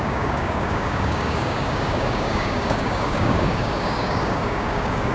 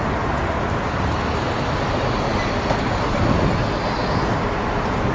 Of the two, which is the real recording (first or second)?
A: second